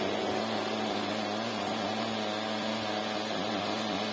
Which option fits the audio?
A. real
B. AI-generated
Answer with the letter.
A